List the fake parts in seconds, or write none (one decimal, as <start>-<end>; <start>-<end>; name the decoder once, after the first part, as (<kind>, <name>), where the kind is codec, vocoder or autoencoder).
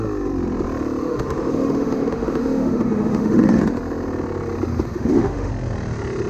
1.0-3.6 (autoencoder, DAC-VAE); 4.7-5.5